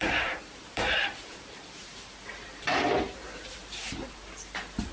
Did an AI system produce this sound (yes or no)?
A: yes